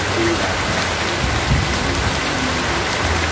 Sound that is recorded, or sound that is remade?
recorded